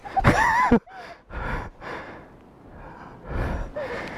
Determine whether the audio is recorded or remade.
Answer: recorded